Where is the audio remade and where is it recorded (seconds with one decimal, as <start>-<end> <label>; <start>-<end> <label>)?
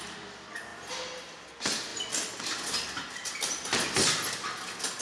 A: 0.0-5.0 recorded